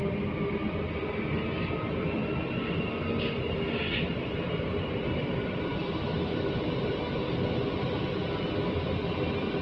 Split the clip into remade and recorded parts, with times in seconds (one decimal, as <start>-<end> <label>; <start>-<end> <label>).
0.0-9.6 recorded